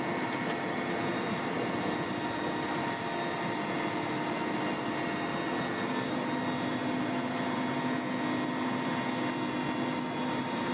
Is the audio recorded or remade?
recorded